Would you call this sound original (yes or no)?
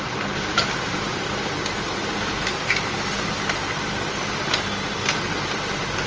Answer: yes